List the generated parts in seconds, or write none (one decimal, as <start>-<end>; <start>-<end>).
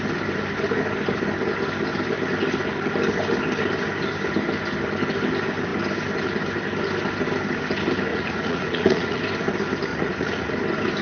8.1-9.2; 9.9-10.5